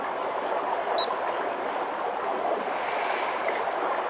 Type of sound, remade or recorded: recorded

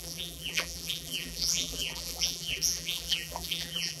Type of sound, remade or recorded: remade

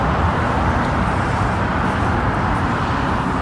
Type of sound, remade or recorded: recorded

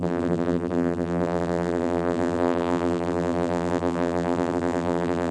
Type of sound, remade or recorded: remade